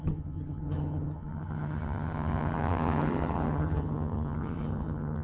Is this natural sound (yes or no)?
no